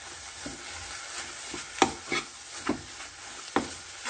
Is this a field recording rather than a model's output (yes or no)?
yes